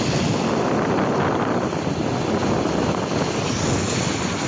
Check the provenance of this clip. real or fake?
real